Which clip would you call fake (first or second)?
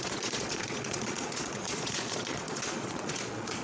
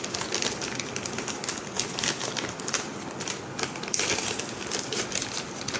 first